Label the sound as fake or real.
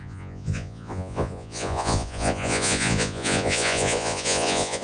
fake